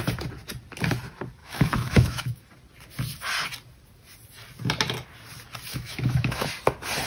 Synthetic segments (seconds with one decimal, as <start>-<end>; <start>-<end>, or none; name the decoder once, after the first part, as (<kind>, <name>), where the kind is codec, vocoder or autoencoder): 1.4-2.4 (autoencoder, DAC-VAE); 5.7-6.5